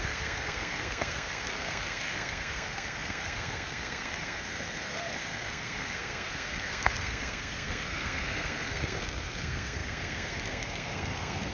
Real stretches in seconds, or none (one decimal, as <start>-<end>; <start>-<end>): none